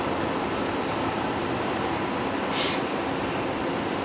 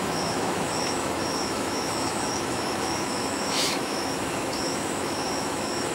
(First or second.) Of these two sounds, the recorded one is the first